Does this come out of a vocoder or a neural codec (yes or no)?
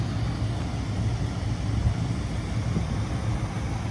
no